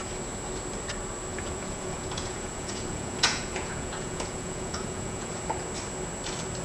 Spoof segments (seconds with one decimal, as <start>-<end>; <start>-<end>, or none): 1.3-5.3